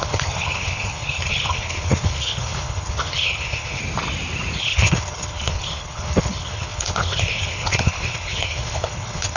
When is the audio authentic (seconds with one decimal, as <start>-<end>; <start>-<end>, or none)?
3.8-4.6